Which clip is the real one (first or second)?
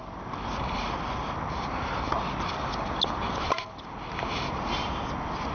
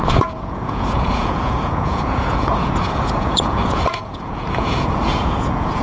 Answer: first